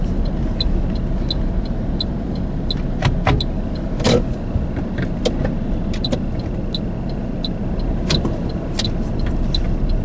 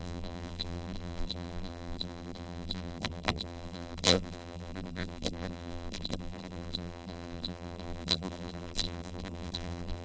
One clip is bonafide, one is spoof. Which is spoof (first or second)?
second